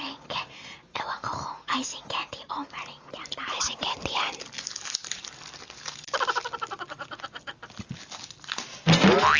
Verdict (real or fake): real